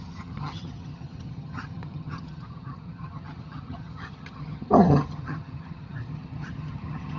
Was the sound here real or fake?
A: fake